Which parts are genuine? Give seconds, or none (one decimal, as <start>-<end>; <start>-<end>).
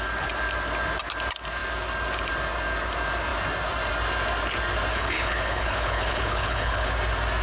0.0-4.9; 6.9-7.4